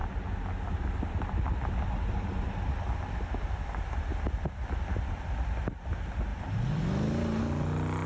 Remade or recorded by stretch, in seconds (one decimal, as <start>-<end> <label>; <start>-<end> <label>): 0.0-8.1 recorded